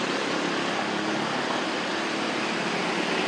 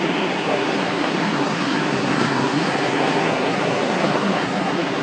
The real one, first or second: first